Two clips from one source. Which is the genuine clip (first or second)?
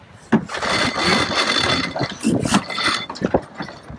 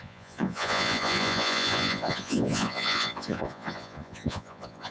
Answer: first